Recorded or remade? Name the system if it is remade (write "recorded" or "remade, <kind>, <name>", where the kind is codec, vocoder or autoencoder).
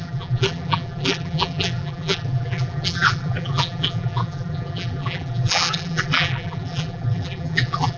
remade, vocoder, BigVGAN v2